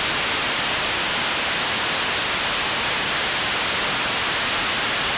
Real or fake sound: fake